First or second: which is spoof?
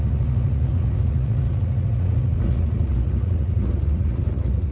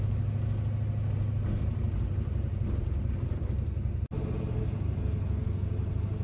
first